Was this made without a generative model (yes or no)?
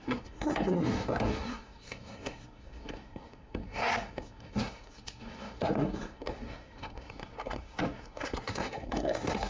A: no